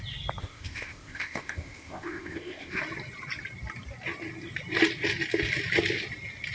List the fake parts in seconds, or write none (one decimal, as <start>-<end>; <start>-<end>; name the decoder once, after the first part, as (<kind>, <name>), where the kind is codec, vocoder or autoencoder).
0.4-2.8 (codec, ZipCodec)